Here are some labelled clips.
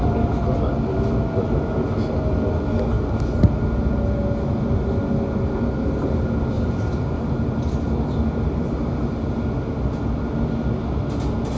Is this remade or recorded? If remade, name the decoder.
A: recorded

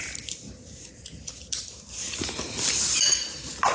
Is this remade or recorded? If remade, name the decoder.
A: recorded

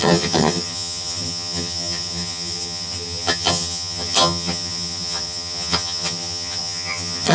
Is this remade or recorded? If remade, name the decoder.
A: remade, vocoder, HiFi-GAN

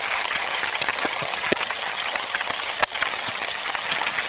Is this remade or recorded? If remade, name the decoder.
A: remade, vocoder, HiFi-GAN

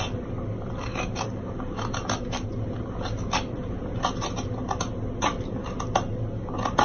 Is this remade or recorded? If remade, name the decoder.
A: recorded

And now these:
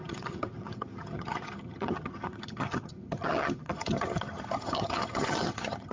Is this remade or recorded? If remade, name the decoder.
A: remade, vocoder, HiFi-GAN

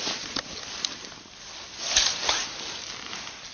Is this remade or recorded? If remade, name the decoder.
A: recorded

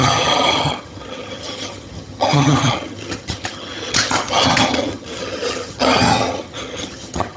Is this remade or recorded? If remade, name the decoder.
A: remade, vocoder, HiFi-GAN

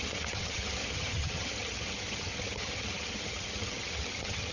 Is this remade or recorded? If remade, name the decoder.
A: remade, vocoder, HiFi-GAN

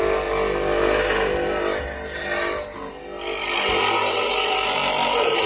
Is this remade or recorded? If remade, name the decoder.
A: recorded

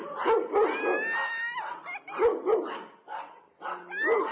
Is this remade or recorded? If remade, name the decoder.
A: recorded